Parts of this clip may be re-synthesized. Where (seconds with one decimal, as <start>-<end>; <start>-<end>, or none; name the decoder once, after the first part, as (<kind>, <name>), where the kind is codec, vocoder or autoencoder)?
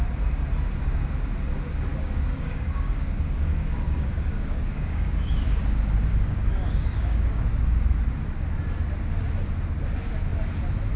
1.9-5.1 (codec, DAC); 6.1-7.4